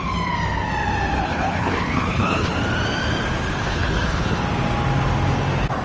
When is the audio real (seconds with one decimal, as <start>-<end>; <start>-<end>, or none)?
0.0-1.2; 2.5-3.6; 4.4-5.8